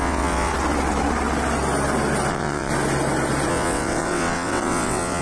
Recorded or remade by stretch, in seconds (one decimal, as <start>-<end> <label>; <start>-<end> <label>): 0.0-0.5 remade; 0.5-2.3 recorded; 2.3-2.7 remade; 2.7-3.5 recorded; 3.5-5.2 remade